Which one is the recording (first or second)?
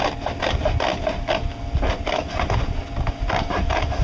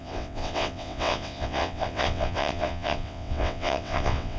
first